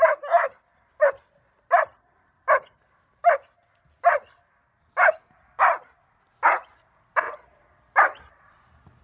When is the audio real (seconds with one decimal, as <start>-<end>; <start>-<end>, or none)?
0.0-9.0